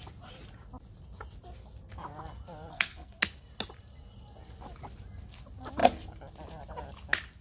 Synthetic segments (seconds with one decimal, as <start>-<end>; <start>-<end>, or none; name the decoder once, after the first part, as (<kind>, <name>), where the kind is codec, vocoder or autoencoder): 2.7-3.2 (codec, SNAC)

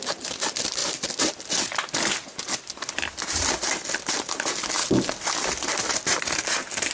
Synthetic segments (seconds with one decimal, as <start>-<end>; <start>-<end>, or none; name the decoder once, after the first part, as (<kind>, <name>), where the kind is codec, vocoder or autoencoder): none

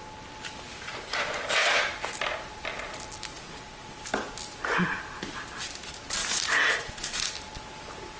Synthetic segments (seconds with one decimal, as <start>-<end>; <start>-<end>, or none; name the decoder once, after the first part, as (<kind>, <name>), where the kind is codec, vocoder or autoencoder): 3.3-4.0 (vocoder, Vocos); 6.2-7.3

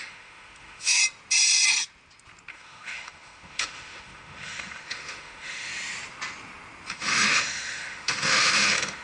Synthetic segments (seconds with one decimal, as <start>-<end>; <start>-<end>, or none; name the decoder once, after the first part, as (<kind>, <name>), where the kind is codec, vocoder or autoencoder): 0.0-1.0 (autoencoder, DAC-VAE); 2.5-5.7; 6.9-9.0

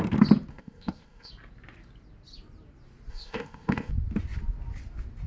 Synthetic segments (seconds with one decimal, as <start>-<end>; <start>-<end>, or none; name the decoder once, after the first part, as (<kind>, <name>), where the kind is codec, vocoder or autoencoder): 0.5-1.3 (codec, ZipCodec); 3.1-3.9

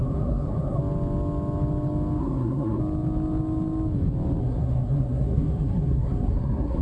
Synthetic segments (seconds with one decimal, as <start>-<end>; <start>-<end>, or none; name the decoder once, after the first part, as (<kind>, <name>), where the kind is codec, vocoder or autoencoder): 0.0-0.8 (codec, SNAC); 2.2-2.8; 4.4-6.8

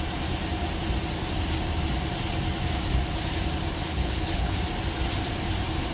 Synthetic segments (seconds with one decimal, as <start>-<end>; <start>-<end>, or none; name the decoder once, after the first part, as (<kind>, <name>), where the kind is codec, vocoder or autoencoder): 3.9-4.6 (codec, HILCodec)

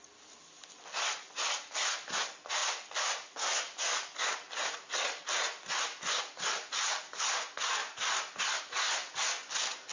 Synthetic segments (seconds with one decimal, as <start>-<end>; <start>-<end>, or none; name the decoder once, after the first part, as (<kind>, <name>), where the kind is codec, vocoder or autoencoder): 2.6-3.6 (vocoder, BigVGAN v2)